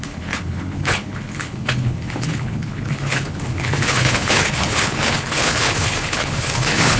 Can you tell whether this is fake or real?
fake